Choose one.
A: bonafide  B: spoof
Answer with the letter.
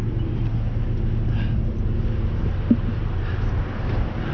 A